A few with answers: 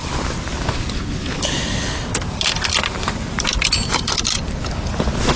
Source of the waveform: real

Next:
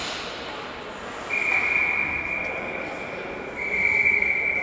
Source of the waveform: real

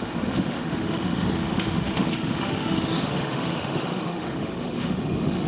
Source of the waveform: fake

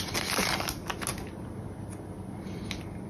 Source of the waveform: real